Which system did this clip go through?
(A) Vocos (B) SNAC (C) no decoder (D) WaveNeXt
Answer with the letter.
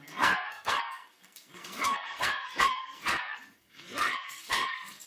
B